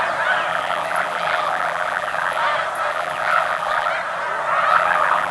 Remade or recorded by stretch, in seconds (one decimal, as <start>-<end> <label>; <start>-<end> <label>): 0.0-0.5 recorded; 0.5-2.4 remade; 2.4-2.9 recorded; 2.9-3.9 remade; 3.9-4.7 recorded; 4.7-5.3 remade